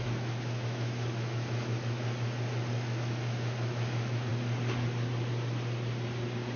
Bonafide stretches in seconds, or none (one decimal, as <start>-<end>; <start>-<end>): 2.0-2.7; 4.3-6.6